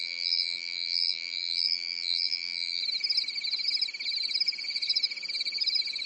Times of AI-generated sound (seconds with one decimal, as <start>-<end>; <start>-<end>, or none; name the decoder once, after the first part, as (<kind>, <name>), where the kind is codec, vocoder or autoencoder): 0.0-2.8 (vocoder, BigVGAN v2)